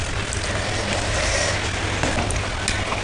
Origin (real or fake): real